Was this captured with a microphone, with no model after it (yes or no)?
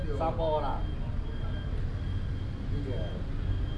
yes